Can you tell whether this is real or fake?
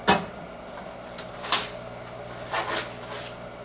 real